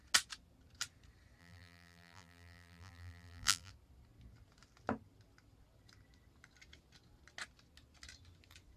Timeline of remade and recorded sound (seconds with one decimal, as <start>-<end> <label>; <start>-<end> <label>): 0.0-1.4 recorded; 1.4-3.7 remade; 3.7-8.8 recorded